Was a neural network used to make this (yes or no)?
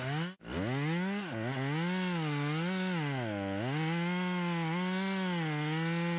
no